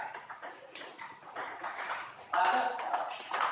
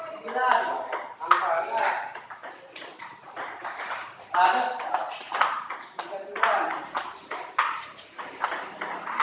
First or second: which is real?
second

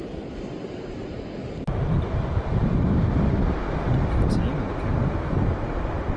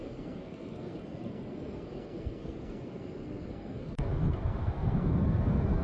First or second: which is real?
first